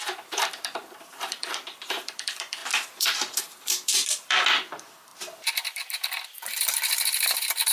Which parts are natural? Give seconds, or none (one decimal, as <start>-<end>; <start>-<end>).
none